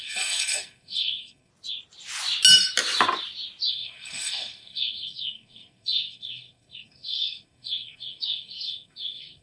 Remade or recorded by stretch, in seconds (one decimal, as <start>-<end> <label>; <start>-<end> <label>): 0.0-1.5 remade; 1.5-3.7 recorded; 3.7-9.4 remade